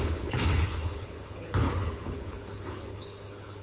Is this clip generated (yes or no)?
yes